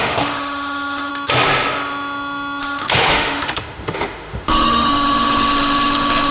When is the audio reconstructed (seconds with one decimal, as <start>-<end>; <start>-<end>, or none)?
0.0-1.1; 2.6-6.3